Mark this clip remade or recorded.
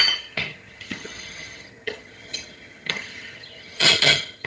remade